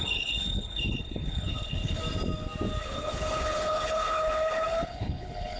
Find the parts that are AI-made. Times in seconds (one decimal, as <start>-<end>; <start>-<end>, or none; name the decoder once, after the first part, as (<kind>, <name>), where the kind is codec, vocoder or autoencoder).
0.0-2.0 (codec, HILCodec); 2.8-5.6